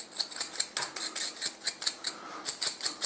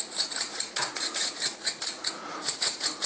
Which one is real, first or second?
first